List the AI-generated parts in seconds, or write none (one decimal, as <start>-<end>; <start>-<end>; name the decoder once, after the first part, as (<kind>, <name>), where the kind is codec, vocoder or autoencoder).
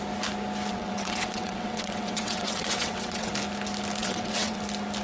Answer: 0.7-3.3 (vocoder, WaveNeXt); 4.0-4.6